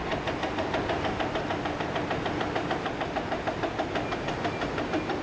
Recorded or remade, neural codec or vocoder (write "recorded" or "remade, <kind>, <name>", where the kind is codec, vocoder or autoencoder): recorded